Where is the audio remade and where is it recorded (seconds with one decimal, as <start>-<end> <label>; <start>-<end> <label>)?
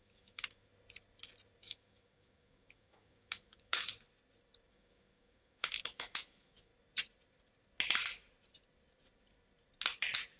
0.0-0.7 remade; 0.7-1.6 recorded; 1.6-3.9 remade; 3.9-4.7 recorded; 4.7-6.7 remade; 6.7-10.4 recorded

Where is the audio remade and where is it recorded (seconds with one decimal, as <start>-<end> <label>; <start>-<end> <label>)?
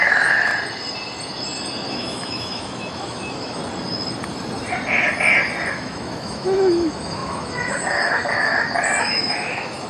0.0-0.5 remade; 0.5-1.9 recorded; 1.9-3.6 remade; 3.6-5.7 recorded; 5.7-8.5 remade; 8.5-9.0 recorded; 9.0-9.9 remade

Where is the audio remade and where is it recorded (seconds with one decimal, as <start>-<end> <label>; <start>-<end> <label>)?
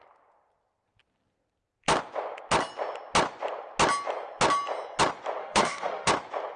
0.0-5.4 recorded; 5.4-6.1 remade; 6.1-6.6 recorded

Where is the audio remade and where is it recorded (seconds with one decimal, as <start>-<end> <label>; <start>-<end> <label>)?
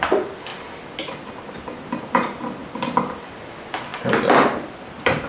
0.0-5.3 recorded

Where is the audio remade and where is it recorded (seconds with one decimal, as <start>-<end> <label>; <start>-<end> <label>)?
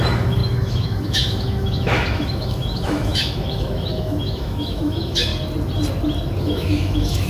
0.0-5.3 remade; 5.3-6.4 recorded; 6.4-7.3 remade